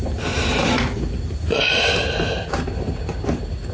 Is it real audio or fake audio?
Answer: real